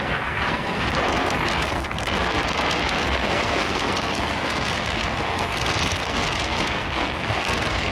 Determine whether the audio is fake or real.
fake